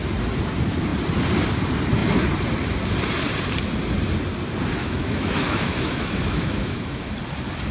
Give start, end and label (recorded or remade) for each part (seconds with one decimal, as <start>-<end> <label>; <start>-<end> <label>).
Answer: 0.0-4.8 recorded; 4.8-7.1 remade; 7.1-7.7 recorded